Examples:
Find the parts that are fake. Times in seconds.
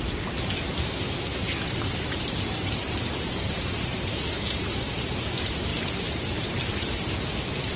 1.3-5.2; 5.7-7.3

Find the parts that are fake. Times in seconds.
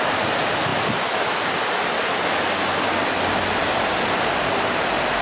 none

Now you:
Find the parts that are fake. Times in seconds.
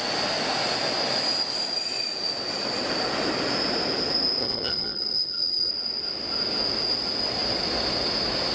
4.4-5.7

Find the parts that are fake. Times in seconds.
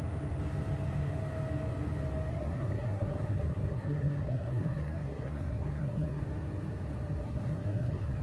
2.3-6.2; 7.2-8.2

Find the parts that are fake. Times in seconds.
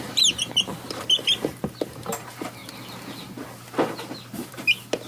none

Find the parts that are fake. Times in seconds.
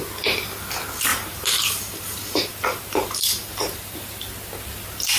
1.1-4.2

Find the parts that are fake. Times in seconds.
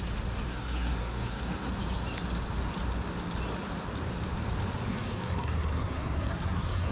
0.5-1.7; 4.9-6.9